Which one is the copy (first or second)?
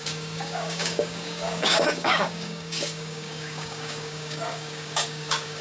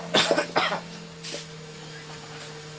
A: first